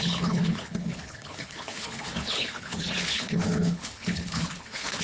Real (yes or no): no